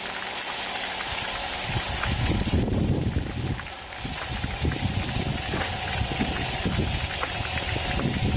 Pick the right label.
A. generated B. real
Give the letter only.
B